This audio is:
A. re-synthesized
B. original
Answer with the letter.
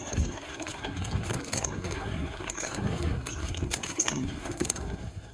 A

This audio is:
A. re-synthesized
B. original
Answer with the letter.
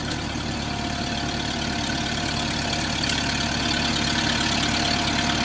B